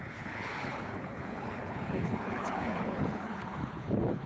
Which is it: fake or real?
fake